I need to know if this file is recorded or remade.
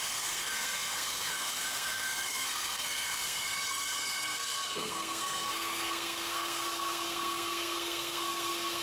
remade